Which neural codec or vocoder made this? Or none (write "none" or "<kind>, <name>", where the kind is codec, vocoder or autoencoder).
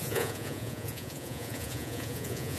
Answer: vocoder, Vocos